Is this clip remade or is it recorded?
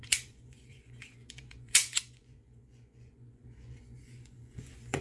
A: remade